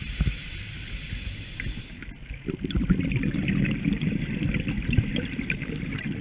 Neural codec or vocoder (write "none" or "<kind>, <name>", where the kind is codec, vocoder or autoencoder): none